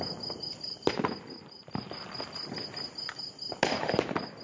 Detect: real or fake real